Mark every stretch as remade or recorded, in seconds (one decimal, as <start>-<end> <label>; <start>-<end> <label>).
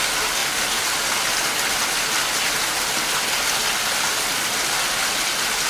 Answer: 0.0-5.7 recorded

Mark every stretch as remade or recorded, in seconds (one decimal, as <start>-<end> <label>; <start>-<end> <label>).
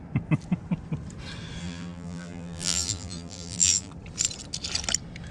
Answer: 0.0-1.6 recorded; 1.6-3.9 remade; 3.9-5.3 recorded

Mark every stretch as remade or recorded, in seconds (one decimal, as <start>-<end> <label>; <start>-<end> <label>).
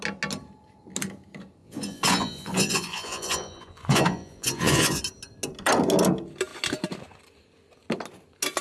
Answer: 0.0-1.6 recorded; 1.6-5.0 remade; 5.0-8.6 recorded